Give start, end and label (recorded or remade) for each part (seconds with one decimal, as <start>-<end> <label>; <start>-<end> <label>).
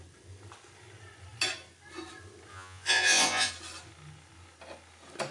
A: 0.0-2.5 recorded; 2.5-3.5 remade; 3.5-5.3 recorded